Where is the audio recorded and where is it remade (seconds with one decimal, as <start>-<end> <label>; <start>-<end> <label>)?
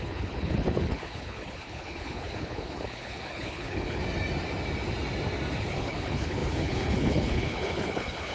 0.0-4.0 remade; 4.0-5.6 recorded; 5.6-8.3 remade